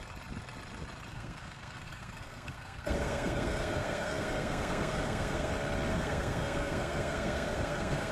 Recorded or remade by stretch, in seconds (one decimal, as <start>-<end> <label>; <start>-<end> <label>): 0.0-1.1 recorded; 1.1-5.5 remade; 5.5-5.9 recorded; 5.9-8.1 remade